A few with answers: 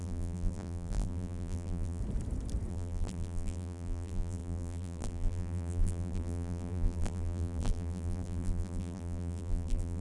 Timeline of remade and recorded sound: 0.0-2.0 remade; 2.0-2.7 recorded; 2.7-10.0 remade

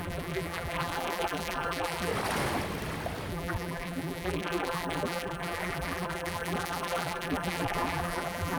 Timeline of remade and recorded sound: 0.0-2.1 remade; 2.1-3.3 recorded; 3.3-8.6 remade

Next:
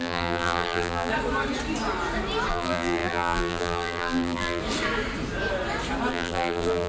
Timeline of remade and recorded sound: 0.0-1.1 remade; 1.1-2.5 recorded; 2.5-4.6 remade; 4.6-6.1 recorded; 6.1-6.9 remade